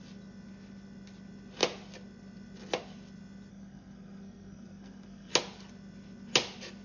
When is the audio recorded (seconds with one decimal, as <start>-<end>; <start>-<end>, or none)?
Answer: 0.0-3.5; 5.3-6.8